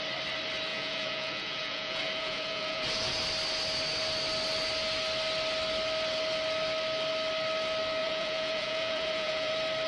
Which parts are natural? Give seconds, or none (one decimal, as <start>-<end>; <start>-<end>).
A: 0.0-0.7; 3.2-8.0; 9.5-9.9